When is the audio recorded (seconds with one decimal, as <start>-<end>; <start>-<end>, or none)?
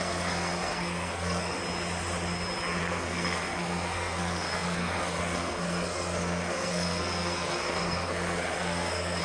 1.6-2.8